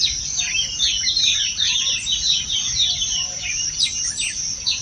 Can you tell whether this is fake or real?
fake